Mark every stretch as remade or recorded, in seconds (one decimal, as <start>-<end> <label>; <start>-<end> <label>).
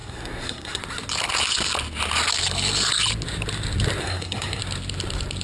0.0-0.8 remade; 0.8-4.0 recorded; 4.0-4.6 remade; 4.6-5.4 recorded